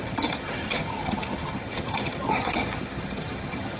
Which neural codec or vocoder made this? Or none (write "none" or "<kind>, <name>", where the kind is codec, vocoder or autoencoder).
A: vocoder, HiFi-GAN